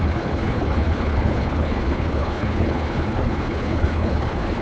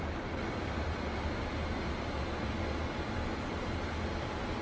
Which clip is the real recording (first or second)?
second